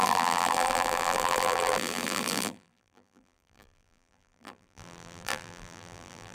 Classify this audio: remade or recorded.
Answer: remade